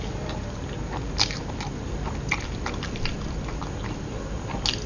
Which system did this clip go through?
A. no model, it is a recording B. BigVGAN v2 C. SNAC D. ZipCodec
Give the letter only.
A